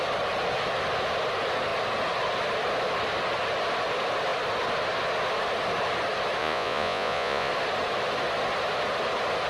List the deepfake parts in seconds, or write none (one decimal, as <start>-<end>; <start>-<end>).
6.4-7.5